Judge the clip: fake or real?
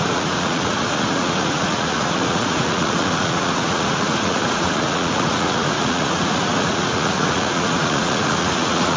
fake